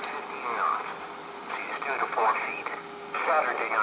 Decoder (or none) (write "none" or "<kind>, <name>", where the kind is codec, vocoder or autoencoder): none